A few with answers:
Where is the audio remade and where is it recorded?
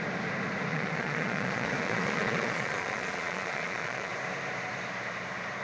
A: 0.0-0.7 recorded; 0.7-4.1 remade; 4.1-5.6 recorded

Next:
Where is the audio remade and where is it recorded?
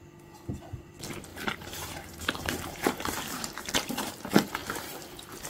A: 0.0-1.3 recorded; 1.3-4.1 remade; 4.1-5.5 recorded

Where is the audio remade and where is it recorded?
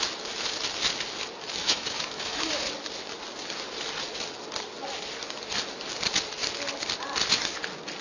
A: 0.0-1.6 recorded; 1.6-2.5 remade; 2.5-8.0 recorded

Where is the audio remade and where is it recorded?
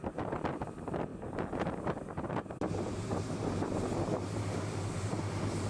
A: 0.0-1.1 recorded; 1.1-4.5 remade; 4.5-5.7 recorded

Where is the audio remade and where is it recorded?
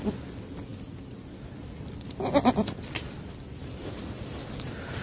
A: 0.0-5.0 recorded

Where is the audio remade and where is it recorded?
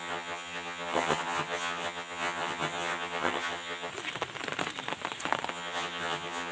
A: 0.0-3.9 remade; 3.9-5.5 recorded; 5.5-6.5 remade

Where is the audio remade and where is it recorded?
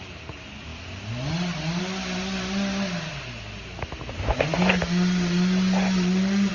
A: 0.0-6.5 recorded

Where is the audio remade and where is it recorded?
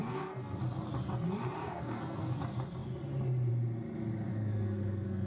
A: 0.0-0.6 remade; 0.6-1.6 recorded; 1.6-2.4 remade; 2.4-4.3 recorded; 4.3-5.3 remade